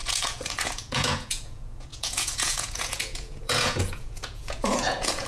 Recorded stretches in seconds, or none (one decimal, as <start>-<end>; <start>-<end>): none